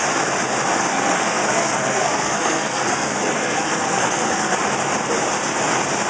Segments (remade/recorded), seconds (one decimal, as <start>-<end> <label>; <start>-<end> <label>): 0.0-0.9 recorded; 0.9-4.6 remade; 4.6-6.1 recorded